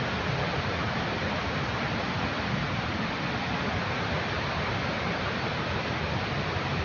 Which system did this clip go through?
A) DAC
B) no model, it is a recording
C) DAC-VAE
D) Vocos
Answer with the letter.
B